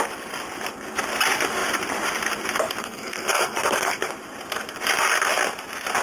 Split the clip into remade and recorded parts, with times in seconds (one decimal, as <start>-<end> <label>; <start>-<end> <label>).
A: 0.0-2.8 recorded; 2.8-4.1 remade; 4.1-6.0 recorded